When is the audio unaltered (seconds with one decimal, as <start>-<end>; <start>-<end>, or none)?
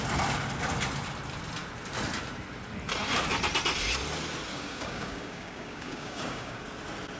0.0-4.5; 6.6-7.2